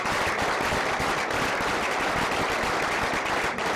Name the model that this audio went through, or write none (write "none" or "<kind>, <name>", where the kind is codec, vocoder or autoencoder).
none